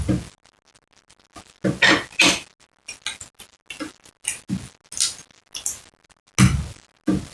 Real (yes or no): yes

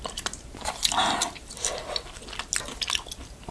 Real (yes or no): yes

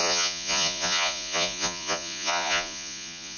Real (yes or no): no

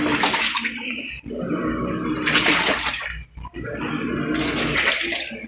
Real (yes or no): yes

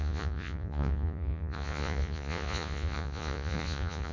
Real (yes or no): no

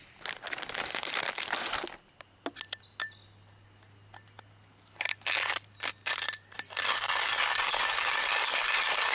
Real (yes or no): yes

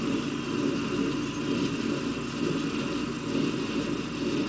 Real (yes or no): yes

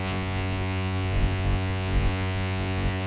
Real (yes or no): no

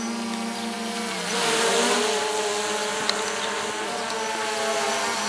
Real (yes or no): yes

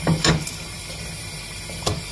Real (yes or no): yes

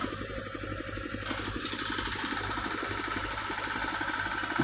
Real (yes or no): yes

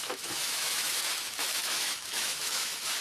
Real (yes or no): no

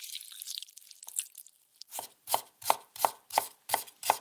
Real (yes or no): no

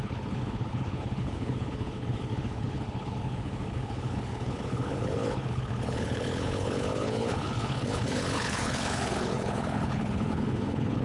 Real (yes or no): no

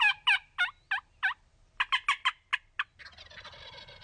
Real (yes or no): yes